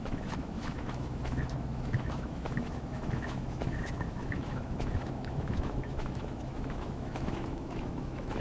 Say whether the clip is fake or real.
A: fake